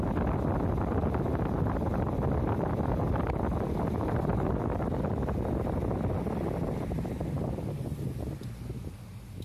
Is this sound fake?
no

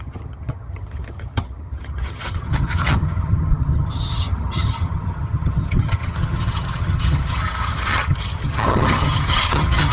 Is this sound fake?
yes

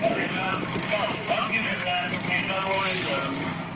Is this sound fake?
yes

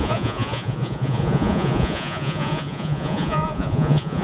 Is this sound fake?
yes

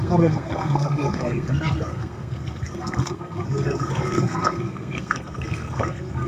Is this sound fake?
yes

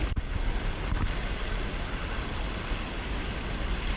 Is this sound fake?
no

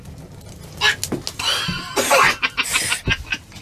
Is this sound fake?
no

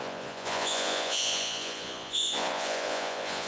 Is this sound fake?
yes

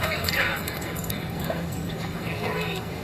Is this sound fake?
yes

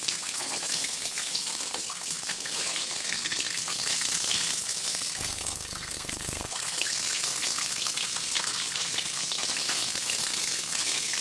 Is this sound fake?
yes